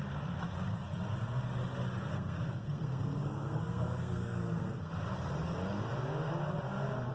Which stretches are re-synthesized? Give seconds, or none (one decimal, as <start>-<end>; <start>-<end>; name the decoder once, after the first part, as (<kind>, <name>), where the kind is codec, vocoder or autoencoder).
2.1-4.9 (codec, SNAC)